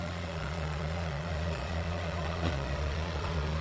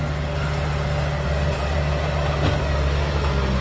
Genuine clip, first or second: second